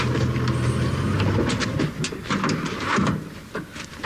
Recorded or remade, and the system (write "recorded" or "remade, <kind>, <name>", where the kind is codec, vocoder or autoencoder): recorded